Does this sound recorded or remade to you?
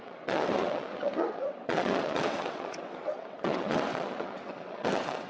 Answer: remade